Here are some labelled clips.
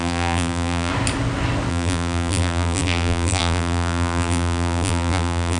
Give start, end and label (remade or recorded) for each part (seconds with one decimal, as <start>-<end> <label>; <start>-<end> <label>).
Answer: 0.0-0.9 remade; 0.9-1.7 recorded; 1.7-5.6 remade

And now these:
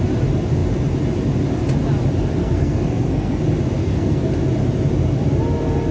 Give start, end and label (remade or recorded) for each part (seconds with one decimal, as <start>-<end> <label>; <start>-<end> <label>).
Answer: 0.0-2.4 recorded; 2.4-3.4 remade; 3.4-3.8 recorded; 3.8-4.3 remade; 4.3-5.9 recorded

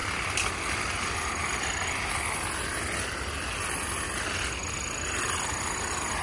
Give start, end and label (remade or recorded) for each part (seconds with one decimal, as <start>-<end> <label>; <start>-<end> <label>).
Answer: 0.0-6.2 recorded

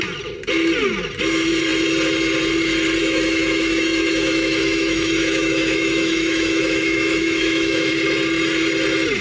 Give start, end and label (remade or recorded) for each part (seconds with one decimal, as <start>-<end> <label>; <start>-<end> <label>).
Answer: 0.0-3.0 recorded; 3.0-7.9 remade; 7.9-9.2 recorded

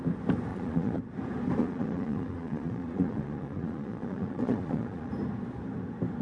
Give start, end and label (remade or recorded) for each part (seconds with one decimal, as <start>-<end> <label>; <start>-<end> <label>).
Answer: 0.0-0.5 recorded; 0.5-1.0 remade; 1.0-1.6 recorded; 1.6-5.1 remade; 5.1-6.2 recorded

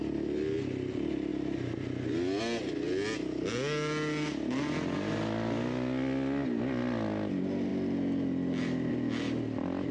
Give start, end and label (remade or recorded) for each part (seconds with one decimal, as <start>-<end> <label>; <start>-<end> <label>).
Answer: 0.0-9.9 recorded